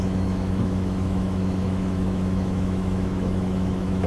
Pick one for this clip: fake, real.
fake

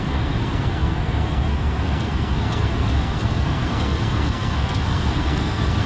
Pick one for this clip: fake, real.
fake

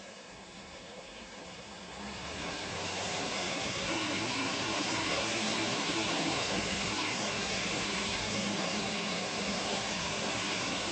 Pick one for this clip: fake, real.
fake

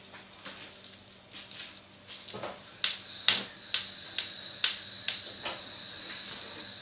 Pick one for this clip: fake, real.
real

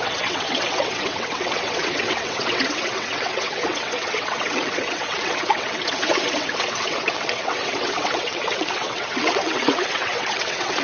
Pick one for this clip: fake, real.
fake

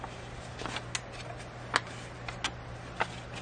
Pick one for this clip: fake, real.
real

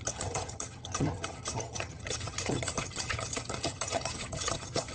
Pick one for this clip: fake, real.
fake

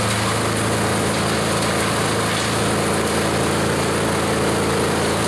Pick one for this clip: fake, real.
real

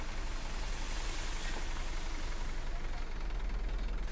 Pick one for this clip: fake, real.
real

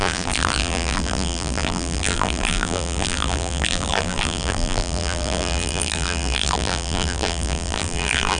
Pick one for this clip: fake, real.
fake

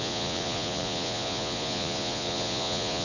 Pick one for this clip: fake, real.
fake